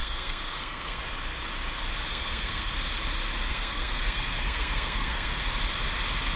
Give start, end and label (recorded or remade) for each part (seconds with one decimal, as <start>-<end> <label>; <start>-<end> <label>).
0.0-1.0 remade; 1.0-2.1 recorded; 2.1-2.7 remade; 2.7-3.5 recorded; 3.5-5.4 remade; 5.4-6.4 recorded